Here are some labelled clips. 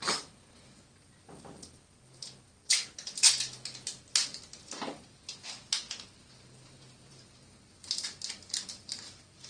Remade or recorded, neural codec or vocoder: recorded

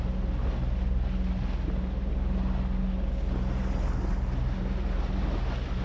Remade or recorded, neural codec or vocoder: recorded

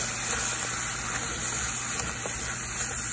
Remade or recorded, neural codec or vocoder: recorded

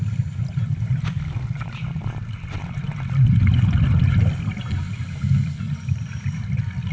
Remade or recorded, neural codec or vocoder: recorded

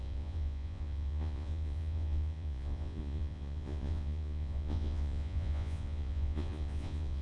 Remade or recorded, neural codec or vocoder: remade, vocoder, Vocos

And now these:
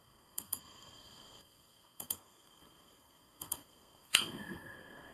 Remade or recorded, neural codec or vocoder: remade, codec, SNAC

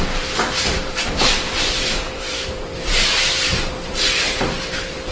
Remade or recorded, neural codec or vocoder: remade, vocoder, BigVGAN v2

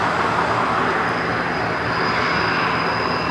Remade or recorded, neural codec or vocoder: recorded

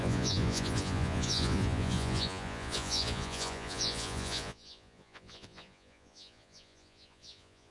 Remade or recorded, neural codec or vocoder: remade, vocoder, Vocos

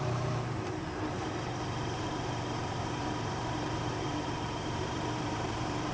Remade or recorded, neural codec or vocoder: remade, vocoder, BigVGAN v2